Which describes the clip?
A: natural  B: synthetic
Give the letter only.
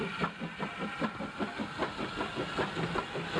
A